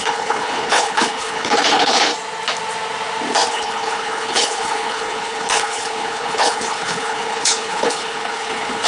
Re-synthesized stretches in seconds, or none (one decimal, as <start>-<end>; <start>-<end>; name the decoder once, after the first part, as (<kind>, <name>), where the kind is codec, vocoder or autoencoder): 0.0-2.1 (codec, HILCodec); 3.5-8.9